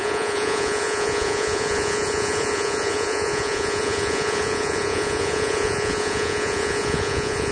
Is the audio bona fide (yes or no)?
no